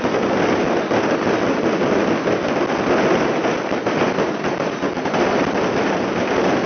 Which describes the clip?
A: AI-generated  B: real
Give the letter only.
B